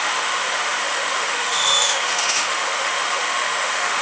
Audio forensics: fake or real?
fake